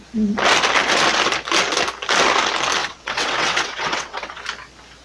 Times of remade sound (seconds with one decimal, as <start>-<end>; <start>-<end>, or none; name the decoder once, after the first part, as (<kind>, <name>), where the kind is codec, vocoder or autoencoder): 2.8-4.4 (vocoder, WaveNeXt)